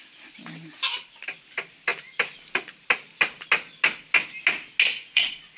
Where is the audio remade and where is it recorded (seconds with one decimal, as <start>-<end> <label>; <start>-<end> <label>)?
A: 0.0-4.9 recorded; 4.9-5.6 remade